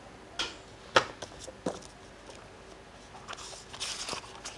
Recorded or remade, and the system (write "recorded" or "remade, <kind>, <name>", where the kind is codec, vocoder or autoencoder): recorded